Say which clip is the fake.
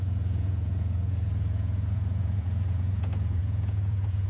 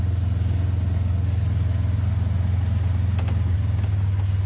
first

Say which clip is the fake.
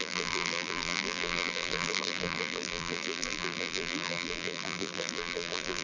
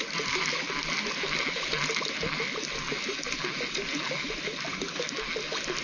first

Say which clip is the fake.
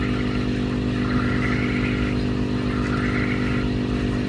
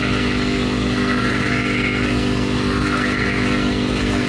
second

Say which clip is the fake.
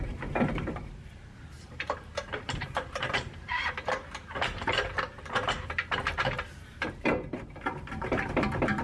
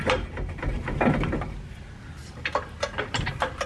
first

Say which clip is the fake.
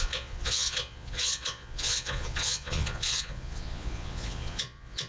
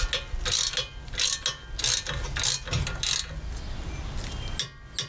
first